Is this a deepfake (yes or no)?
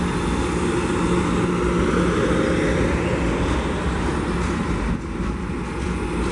no